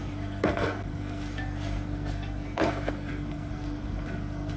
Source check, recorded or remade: remade